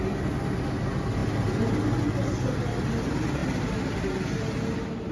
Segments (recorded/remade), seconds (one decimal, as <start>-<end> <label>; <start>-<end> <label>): 0.0-5.1 recorded